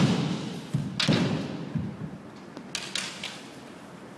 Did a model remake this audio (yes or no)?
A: no